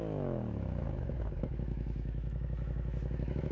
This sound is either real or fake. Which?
fake